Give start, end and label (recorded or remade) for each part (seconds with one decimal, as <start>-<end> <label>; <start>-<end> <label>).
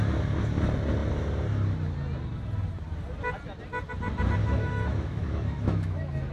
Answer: 0.0-4.4 recorded; 4.4-6.3 remade